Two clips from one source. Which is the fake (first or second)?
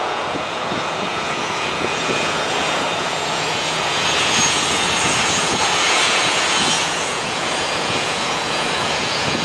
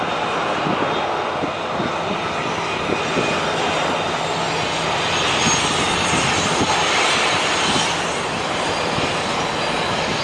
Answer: first